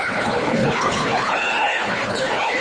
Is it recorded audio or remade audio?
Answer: remade